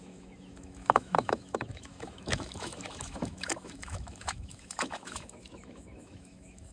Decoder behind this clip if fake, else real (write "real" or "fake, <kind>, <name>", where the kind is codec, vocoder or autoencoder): fake, autoencoder, DAC-VAE